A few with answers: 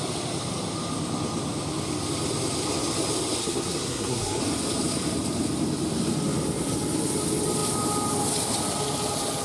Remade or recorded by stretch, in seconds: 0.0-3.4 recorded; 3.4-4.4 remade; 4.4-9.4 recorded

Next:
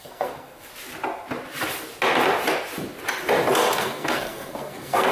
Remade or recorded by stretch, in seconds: 0.0-0.7 remade; 0.7-3.8 recorded; 3.8-5.1 remade

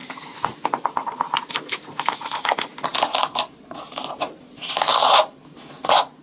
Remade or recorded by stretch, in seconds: 0.0-6.2 recorded

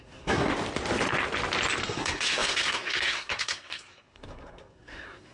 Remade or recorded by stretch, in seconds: 0.0-0.5 remade; 0.5-1.8 recorded; 1.8-5.3 remade

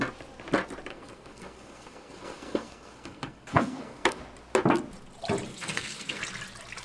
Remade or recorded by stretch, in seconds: 0.0-0.9 recorded; 0.9-4.2 remade; 4.2-5.5 recorded; 5.5-6.2 remade; 6.2-6.8 recorded

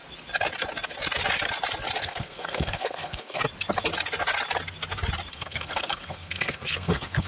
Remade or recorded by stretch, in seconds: 0.0-2.0 recorded; 2.0-3.4 remade; 3.4-5.3 recorded; 5.3-7.3 remade

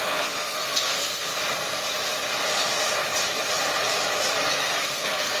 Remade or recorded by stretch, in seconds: 0.0-1.3 remade; 1.3-4.5 recorded; 4.5-5.4 remade